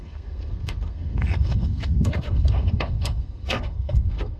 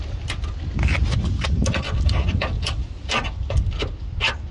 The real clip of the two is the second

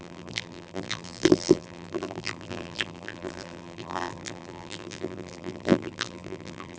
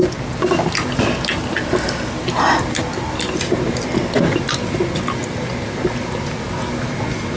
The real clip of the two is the second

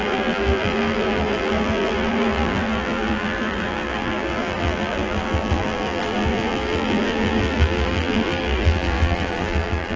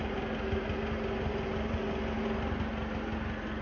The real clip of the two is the second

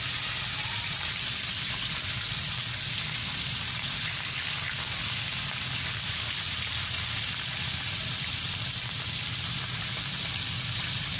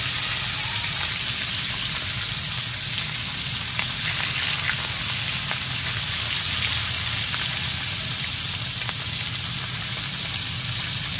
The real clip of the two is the second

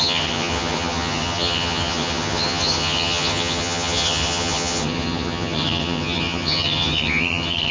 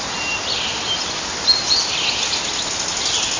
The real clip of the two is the second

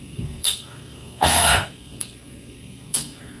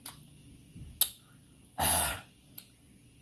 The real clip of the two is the second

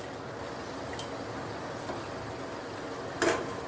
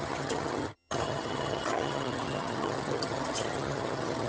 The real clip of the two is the first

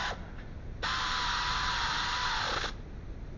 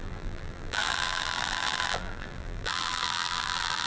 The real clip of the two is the first